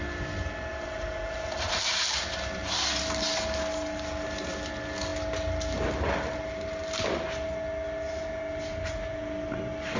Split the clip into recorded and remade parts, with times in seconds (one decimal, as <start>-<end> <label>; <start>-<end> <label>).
0.0-0.7 recorded; 0.7-2.2 remade; 2.2-10.0 recorded

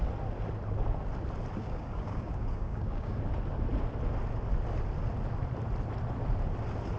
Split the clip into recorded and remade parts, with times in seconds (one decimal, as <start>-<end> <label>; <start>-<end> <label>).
0.0-1.6 recorded; 1.6-3.2 remade; 3.2-7.0 recorded

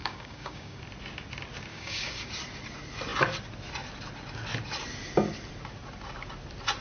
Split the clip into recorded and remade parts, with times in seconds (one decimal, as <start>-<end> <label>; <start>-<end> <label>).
0.0-0.8 remade; 0.8-1.7 recorded; 1.7-2.3 remade; 2.3-6.8 recorded

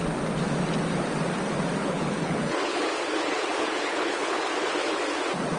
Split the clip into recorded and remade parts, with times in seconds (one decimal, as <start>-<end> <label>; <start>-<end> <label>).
0.0-1.8 recorded; 1.8-5.0 remade; 5.0-5.6 recorded

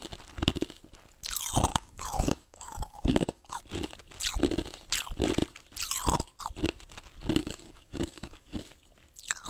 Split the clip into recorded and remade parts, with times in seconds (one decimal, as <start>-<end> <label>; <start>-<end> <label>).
0.0-1.7 recorded; 1.7-3.6 remade; 3.6-7.4 recorded; 7.4-8.6 remade; 8.6-9.5 recorded